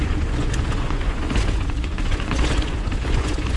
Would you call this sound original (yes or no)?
no